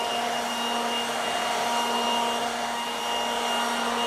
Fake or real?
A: real